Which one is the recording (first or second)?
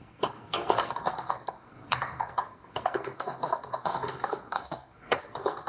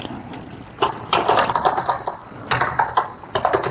second